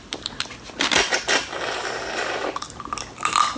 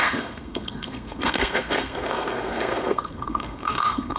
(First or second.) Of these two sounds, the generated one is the second